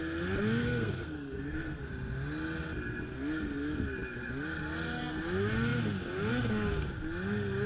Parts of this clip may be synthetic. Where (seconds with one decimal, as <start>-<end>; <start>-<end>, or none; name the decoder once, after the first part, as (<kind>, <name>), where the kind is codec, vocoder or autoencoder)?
0.6-1.9 (codec, SNAC)